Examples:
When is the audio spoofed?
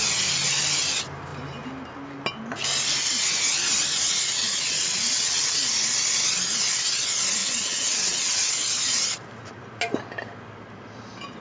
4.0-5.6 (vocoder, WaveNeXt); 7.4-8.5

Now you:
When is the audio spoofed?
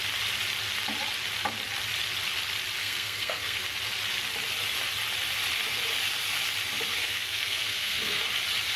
2.8-3.6 (codec, SNAC); 7.0-8.2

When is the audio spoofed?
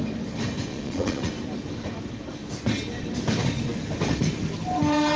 0.7-1.3 (vocoder, Vocos)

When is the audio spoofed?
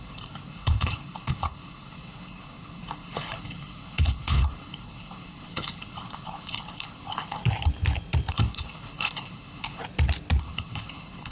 0.0-7.4 (codec, HILCodec); 8.3-9.8; 10.4-11.3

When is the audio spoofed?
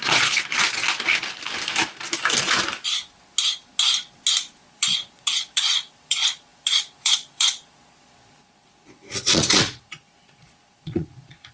0.0-0.8 (vocoder, Vocos); 4.6-11.5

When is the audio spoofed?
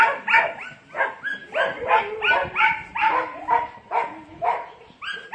1.3-2.0 (vocoder, BigVGAN v2); 2.4-4.8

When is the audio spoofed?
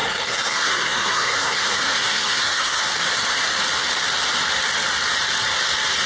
0.0-2.8 (codec, SNAC)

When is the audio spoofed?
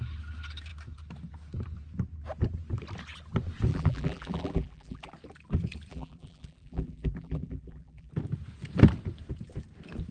3.7-5.1 (vocoder, BigVGAN v2); 5.9-8.1